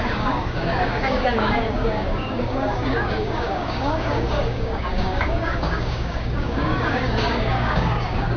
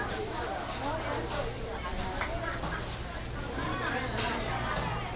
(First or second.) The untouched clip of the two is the second